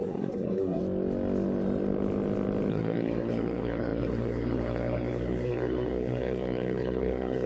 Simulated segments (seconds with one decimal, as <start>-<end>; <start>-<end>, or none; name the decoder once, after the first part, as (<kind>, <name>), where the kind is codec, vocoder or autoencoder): 0.0-0.8 (codec, SNAC); 2.7-7.5